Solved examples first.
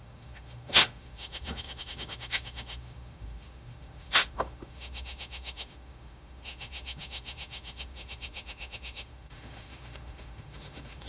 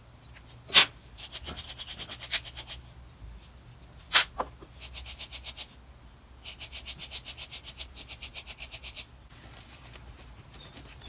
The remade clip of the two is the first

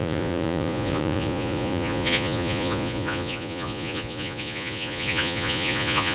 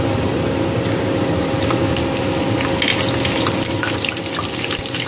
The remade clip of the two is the first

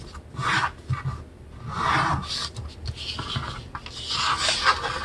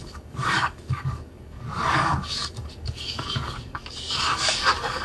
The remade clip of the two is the second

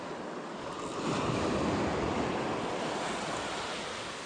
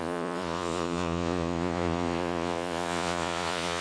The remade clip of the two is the second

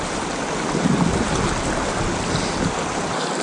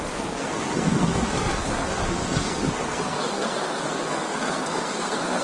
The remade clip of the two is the second